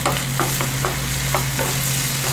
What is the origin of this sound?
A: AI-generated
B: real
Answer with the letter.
B